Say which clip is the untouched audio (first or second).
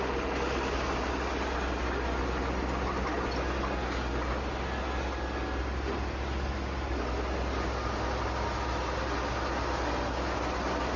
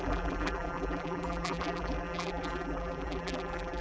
first